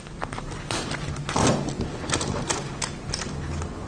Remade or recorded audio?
recorded